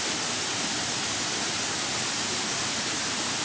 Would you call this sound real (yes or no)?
yes